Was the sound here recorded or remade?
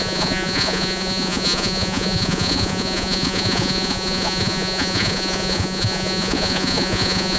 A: remade